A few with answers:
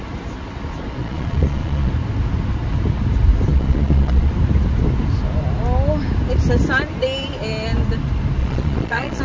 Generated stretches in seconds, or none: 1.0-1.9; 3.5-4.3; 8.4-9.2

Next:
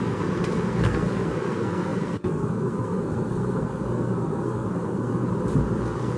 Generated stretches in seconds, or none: 0.0-5.3; 5.8-6.2

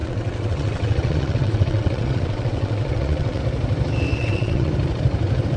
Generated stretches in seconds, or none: 0.0-3.4; 4.1-4.7